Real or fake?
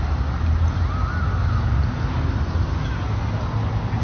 real